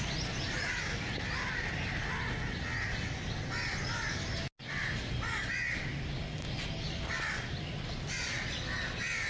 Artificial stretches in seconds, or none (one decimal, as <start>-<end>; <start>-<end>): none